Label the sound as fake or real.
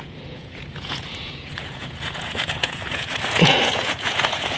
fake